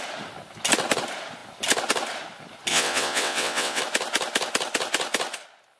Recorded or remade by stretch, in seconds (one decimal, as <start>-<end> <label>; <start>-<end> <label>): 0.0-2.7 recorded; 2.7-3.8 remade; 3.8-5.8 recorded